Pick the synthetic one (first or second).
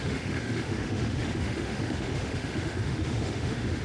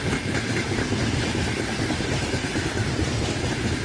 first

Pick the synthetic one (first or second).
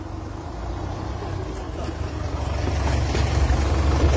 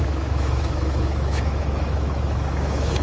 second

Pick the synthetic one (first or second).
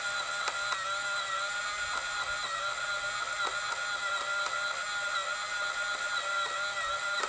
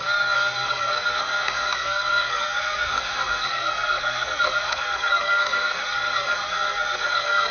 second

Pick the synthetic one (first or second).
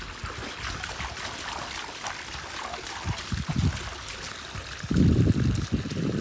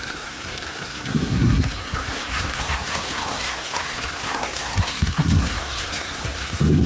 second